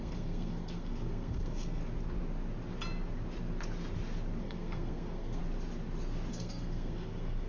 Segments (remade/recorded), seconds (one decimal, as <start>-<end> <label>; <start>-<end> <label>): 0.0-1.8 remade; 1.8-4.4 recorded; 4.4-5.4 remade; 5.4-6.3 recorded; 6.3-7.5 remade